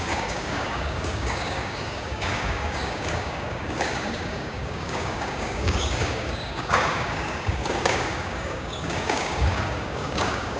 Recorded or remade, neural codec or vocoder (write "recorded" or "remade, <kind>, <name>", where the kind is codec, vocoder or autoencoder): remade, codec, DAC